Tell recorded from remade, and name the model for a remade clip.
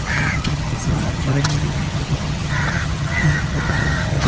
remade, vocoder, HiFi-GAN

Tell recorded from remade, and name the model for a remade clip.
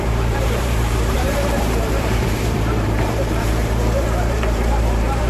remade, vocoder, BigVGAN v2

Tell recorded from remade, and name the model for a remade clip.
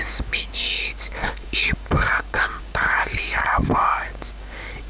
remade, codec, DAC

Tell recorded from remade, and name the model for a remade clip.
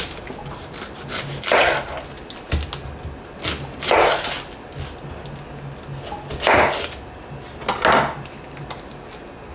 recorded